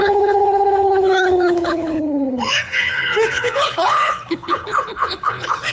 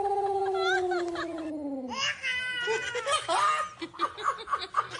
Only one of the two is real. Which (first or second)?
second